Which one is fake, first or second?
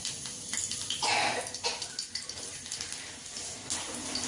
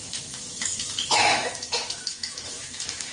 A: second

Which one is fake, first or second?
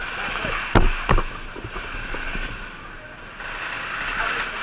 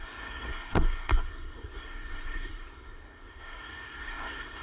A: second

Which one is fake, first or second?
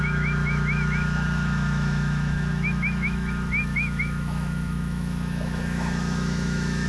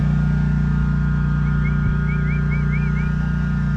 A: first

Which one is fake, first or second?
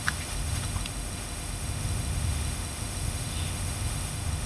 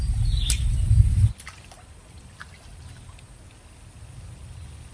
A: first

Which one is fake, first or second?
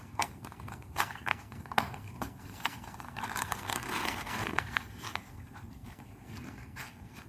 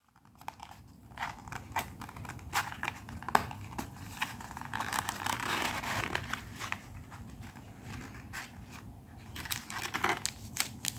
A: first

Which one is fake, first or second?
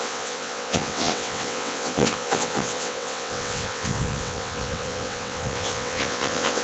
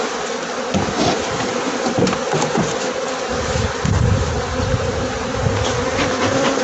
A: first